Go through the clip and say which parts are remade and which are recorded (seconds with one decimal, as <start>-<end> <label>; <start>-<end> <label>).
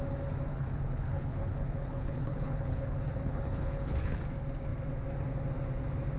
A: 0.0-0.5 recorded; 0.5-4.2 remade; 4.2-6.2 recorded